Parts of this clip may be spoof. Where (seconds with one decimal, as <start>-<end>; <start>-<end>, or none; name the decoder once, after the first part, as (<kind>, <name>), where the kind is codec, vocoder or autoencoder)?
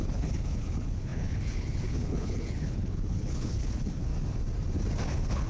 0.0-4.1 (codec, HILCodec); 5.1-5.5